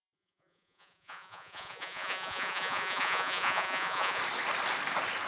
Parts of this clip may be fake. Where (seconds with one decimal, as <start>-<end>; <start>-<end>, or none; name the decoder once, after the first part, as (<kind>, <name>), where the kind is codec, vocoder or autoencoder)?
0.0-4.2 (vocoder, Vocos)